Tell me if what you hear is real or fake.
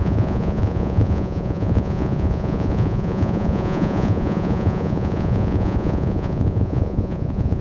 fake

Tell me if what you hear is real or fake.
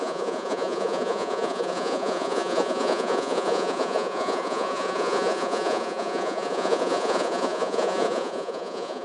fake